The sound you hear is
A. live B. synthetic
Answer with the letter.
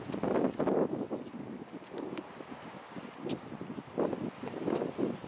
A